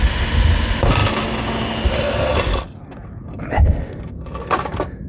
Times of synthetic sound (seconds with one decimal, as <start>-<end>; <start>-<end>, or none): none